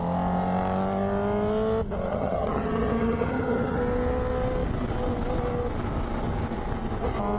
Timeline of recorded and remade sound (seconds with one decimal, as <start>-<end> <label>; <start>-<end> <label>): 0.0-2.1 recorded; 2.1-3.8 remade; 3.8-7.4 recorded